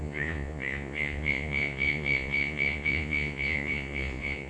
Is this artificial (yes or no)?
yes